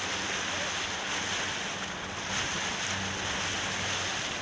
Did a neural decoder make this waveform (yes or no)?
no